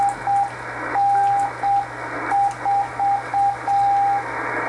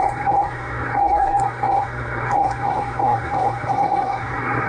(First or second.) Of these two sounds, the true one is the first